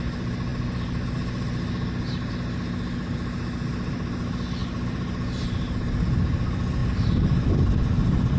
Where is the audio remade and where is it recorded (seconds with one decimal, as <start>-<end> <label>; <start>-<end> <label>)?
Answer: 0.0-4.6 recorded; 4.6-6.0 remade; 6.0-8.4 recorded